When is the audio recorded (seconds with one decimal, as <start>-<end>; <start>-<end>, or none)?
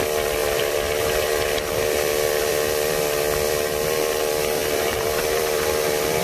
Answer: none